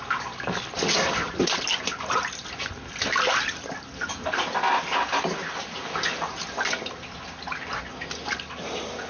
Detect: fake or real real